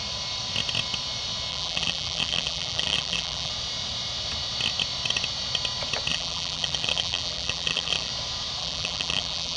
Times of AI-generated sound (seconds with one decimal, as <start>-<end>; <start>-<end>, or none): 1.5-3.5; 6.1-8.1; 8.6-9.6